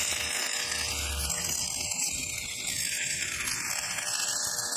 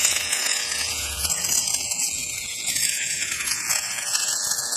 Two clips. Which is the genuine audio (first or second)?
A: first